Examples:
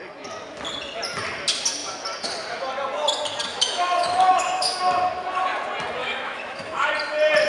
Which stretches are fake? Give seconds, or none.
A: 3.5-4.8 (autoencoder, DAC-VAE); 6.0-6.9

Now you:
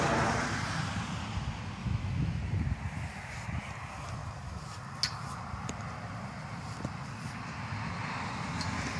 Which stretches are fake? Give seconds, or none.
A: 1.8-2.4 (autoencoder, DAC-VAE)

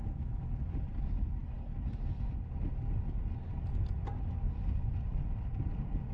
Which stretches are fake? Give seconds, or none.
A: 0.0-0.7 (autoencoder, DAC-VAE)

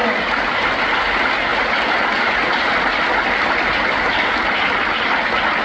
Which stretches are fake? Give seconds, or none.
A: none